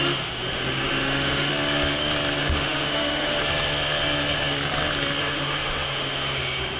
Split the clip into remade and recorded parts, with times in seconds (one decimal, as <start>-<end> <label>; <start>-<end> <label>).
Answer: 0.0-1.5 remade; 1.5-2.4 recorded; 2.4-3.4 remade; 3.4-5.2 recorded; 5.2-6.8 remade